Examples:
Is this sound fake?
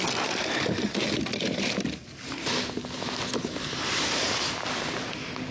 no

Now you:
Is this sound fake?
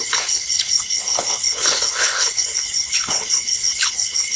yes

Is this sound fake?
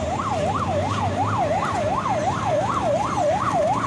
yes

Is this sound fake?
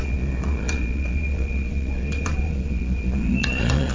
yes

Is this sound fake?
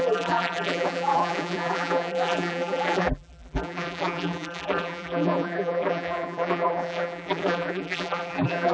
yes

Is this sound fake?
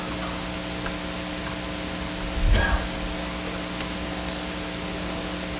no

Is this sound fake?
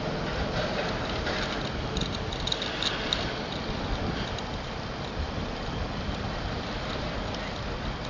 no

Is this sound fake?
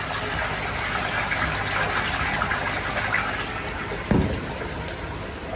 no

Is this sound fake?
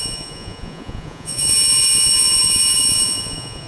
yes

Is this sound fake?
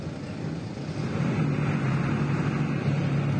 no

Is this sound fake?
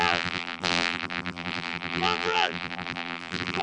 yes